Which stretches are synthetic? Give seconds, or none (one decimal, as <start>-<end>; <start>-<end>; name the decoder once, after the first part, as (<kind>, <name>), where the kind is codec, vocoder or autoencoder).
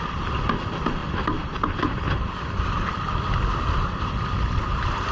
none